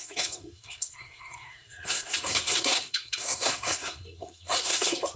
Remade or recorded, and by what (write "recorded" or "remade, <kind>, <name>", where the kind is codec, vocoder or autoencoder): remade, codec, SNAC